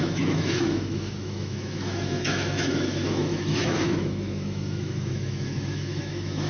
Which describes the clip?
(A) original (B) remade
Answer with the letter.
B